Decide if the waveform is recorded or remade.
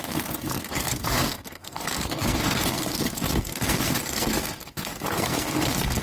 remade